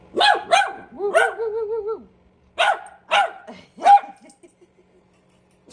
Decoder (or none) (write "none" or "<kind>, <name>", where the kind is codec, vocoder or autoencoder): none